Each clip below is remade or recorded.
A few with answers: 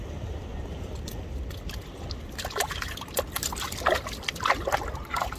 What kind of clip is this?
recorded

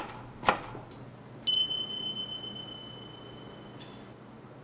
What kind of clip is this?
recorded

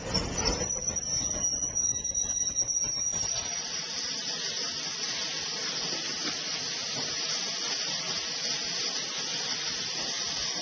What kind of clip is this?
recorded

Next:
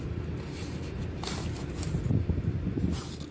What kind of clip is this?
recorded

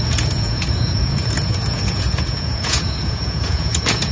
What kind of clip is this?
remade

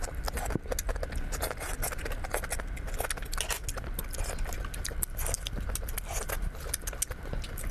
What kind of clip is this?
recorded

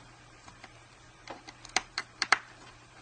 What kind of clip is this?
remade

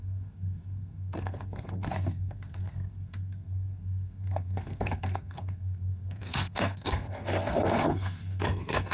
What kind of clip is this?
remade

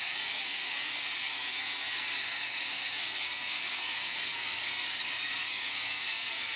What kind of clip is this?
remade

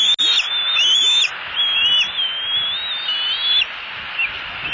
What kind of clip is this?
recorded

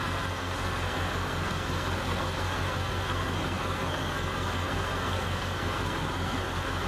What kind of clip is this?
remade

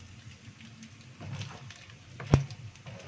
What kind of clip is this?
recorded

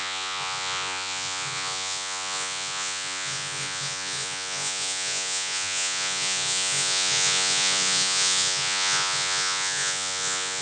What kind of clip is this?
remade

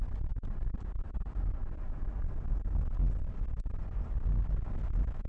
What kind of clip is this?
recorded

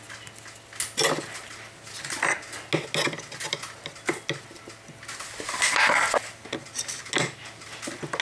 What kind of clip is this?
recorded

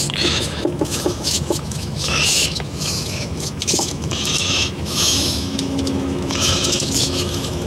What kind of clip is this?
remade